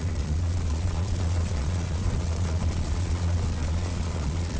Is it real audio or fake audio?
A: fake